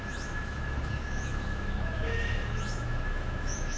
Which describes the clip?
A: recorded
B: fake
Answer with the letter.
B